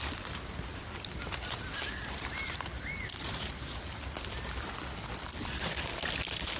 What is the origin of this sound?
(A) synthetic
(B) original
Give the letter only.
B